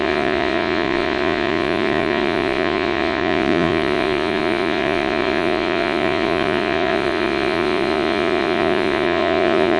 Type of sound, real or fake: fake